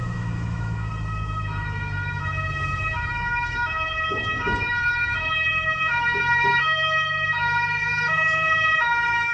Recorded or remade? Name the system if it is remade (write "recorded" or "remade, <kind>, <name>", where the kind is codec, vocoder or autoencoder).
remade, autoencoder, DAC-VAE